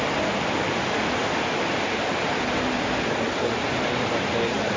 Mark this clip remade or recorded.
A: recorded